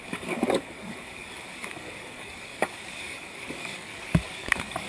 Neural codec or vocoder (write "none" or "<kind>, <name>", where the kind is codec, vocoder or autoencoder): codec, DAC